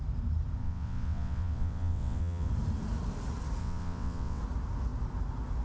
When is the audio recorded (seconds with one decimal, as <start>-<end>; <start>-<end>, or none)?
0.0-0.6; 2.5-3.6; 4.4-5.6